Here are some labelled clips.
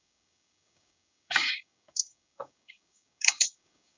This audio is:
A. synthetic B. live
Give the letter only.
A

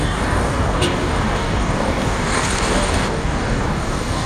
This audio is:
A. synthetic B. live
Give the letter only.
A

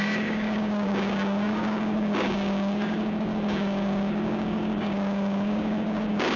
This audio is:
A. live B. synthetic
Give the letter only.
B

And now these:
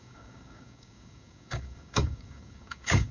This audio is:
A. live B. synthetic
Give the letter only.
B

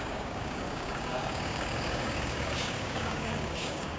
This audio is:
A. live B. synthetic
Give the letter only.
B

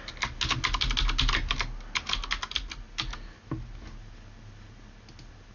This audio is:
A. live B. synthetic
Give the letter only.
A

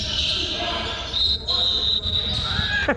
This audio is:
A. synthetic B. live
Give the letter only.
B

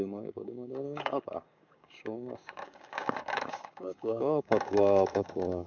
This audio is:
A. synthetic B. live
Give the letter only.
A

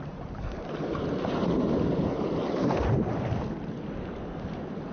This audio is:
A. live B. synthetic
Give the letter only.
A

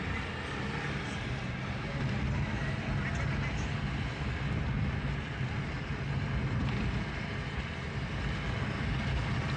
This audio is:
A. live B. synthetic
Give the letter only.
A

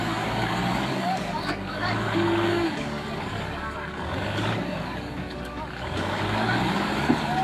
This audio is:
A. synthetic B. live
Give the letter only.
A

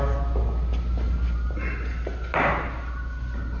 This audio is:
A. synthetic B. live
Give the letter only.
B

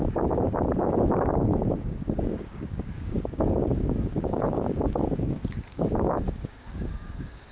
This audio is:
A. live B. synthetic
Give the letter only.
B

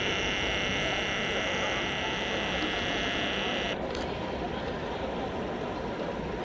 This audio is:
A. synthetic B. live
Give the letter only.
B